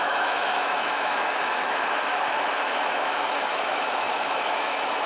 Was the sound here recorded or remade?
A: remade